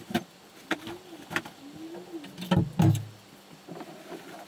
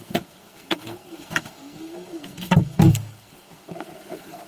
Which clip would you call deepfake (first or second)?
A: second